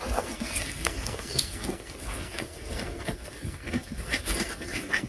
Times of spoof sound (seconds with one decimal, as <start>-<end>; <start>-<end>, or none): 0.0-5.1